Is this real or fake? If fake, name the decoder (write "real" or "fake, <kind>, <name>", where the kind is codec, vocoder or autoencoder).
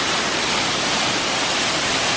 real